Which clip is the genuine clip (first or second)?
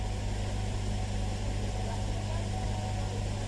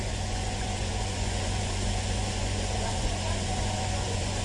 first